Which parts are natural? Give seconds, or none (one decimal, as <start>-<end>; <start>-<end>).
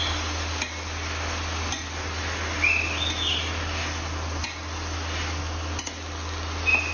0.0-6.9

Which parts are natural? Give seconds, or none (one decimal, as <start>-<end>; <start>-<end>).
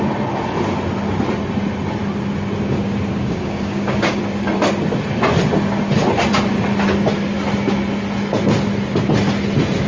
0.0-3.1; 4.2-9.9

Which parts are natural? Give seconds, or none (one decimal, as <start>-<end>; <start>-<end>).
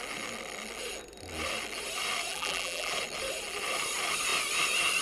0.0-2.3; 2.9-5.0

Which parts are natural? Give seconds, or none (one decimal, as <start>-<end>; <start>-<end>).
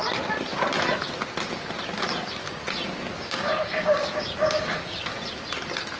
0.0-3.1; 5.0-6.0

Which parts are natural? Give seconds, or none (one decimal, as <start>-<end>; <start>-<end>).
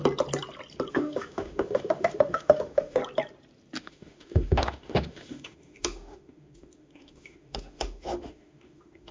0.0-0.9; 3.0-3.8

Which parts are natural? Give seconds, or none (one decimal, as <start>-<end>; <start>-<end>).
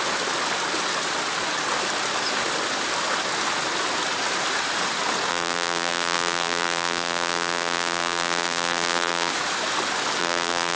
0.0-5.3; 9.3-10.2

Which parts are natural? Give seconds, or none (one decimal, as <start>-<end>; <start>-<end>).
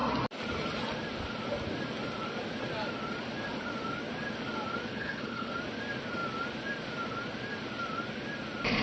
0.0-4.9; 5.5-8.8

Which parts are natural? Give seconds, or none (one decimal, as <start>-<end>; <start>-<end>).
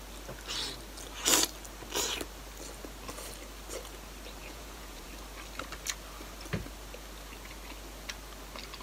0.0-4.4; 5.1-8.8